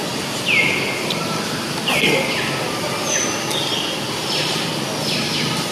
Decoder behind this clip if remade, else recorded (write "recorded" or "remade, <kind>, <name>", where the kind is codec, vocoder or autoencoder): recorded